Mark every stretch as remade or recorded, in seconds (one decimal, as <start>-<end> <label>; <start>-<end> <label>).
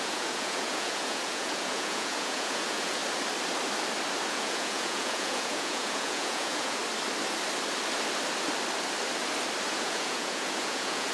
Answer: 0.0-3.0 remade; 3.0-4.3 recorded; 4.3-6.8 remade; 6.8-9.7 recorded; 9.7-11.1 remade